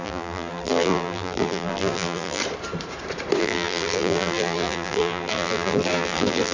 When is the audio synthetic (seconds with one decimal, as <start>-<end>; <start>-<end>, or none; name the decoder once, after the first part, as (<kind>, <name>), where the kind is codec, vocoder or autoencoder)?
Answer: 0.0-2.4 (vocoder, BigVGAN v2); 3.4-6.5